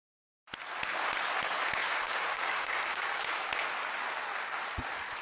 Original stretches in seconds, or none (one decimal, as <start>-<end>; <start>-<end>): 0.0-1.8; 3.3-5.2